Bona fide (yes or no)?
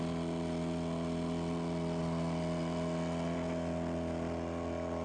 yes